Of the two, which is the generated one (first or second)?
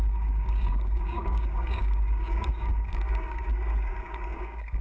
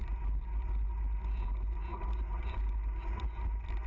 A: first